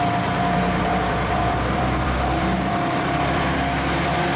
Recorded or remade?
remade